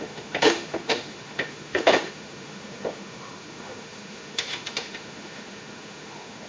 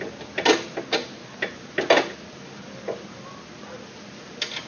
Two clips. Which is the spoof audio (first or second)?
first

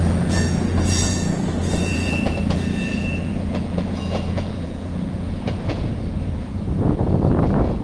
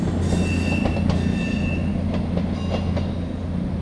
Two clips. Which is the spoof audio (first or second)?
first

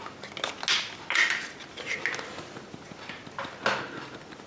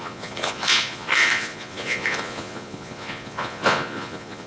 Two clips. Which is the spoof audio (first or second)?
second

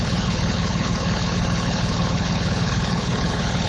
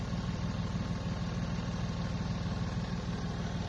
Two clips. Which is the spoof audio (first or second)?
first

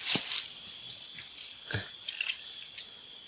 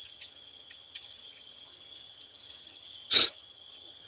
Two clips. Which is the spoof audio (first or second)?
second